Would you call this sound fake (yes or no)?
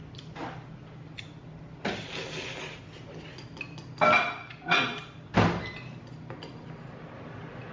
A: no